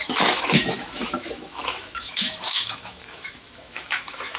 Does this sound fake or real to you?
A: fake